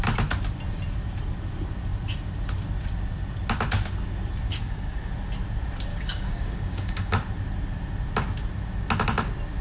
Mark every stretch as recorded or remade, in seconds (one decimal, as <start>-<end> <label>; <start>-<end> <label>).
0.0-4.5 recorded; 4.5-5.1 remade; 5.1-5.9 recorded; 5.9-7.1 remade; 7.1-9.6 recorded